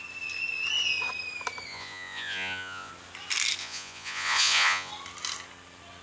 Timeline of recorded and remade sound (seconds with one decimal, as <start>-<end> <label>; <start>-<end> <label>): 0.0-1.7 recorded; 1.7-2.9 remade; 2.9-3.6 recorded; 3.6-4.9 remade; 4.9-6.0 recorded